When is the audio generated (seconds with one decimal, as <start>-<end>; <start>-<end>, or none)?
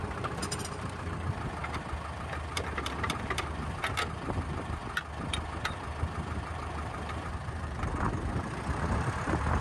0.0-1.6; 2.2-4.8; 5.8-9.6